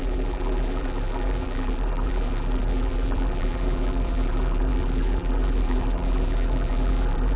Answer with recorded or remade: remade